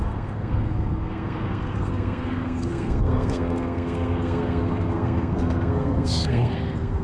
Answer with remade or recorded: remade